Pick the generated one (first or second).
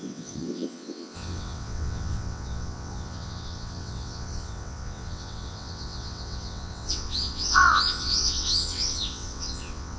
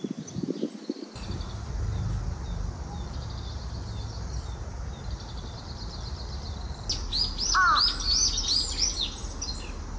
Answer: first